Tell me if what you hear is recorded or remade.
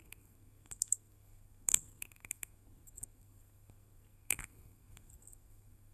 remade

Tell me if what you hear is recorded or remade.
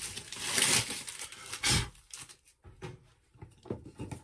recorded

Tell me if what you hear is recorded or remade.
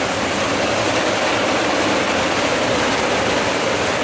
recorded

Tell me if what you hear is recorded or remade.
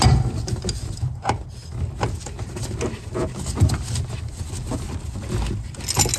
recorded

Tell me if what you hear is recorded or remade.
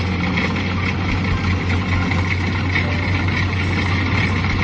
recorded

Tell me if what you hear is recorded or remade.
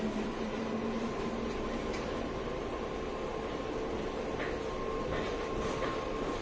recorded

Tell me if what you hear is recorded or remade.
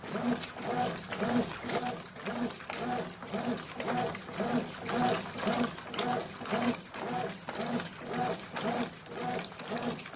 recorded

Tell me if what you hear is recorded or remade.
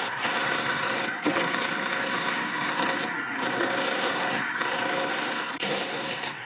remade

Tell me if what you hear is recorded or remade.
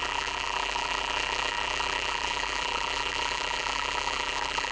remade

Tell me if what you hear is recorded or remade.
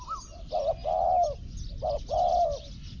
recorded